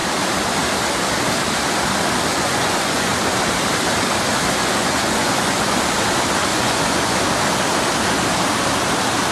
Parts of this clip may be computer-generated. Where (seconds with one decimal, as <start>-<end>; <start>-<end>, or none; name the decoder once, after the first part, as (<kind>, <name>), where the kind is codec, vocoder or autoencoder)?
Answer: 2.3-3.1 (vocoder, Vocos); 4.6-5.8; 6.5-7.2